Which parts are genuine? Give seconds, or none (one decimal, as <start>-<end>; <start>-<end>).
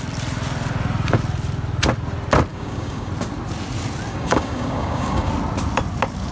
0.0-2.5; 3.1-4.1; 5.3-6.3